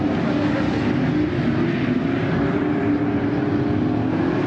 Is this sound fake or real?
real